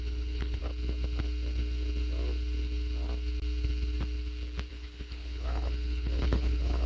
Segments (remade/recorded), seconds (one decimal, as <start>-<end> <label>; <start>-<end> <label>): 0.0-0.6 remade; 0.6-4.7 recorded; 4.7-6.9 remade

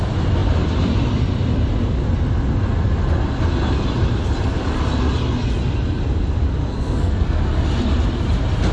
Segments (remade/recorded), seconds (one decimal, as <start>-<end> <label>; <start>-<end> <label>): 0.0-6.6 recorded; 6.6-7.4 remade; 7.4-8.7 recorded

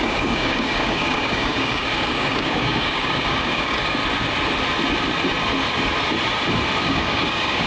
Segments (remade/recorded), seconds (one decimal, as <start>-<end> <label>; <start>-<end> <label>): 0.0-4.0 remade; 4.0-6.8 recorded; 6.8-7.7 remade

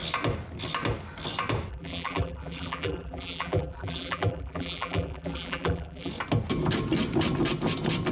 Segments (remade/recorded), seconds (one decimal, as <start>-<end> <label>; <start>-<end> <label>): 0.0-1.7 recorded; 1.7-6.1 remade; 6.1-8.1 recorded